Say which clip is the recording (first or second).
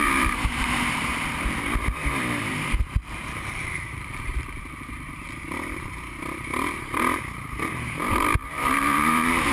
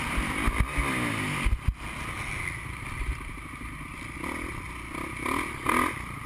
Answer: second